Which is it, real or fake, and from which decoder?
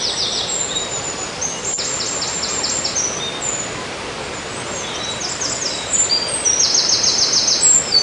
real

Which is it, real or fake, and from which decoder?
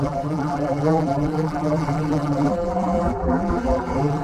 fake, vocoder, BigVGAN v2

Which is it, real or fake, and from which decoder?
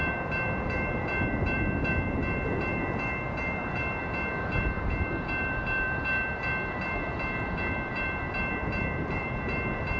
fake, vocoder, BigVGAN v2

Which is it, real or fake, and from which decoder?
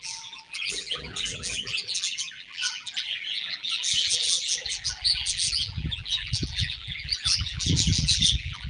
fake, vocoder, BigVGAN v2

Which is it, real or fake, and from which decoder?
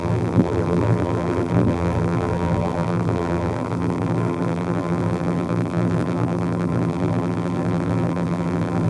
fake, vocoder, BigVGAN v2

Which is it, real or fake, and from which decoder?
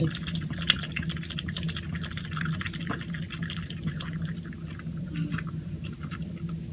real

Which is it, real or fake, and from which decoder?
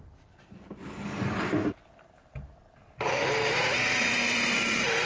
real